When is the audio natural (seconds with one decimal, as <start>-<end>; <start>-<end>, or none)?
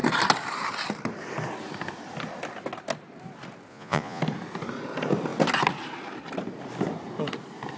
0.0-3.7; 4.2-7.8